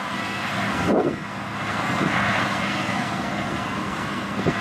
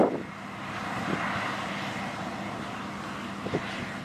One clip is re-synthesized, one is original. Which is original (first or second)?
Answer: second